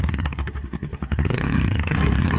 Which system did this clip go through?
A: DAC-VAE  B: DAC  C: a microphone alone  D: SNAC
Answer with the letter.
D